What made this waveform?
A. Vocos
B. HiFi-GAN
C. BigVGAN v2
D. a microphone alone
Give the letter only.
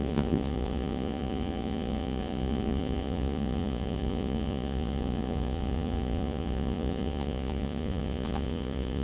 A